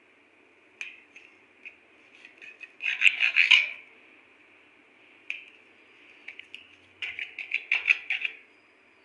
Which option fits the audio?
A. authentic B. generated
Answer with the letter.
A